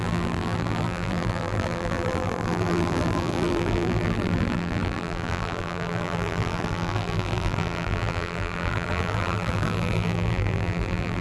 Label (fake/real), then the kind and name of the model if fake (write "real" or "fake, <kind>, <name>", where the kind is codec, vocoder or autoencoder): fake, vocoder, BigVGAN v2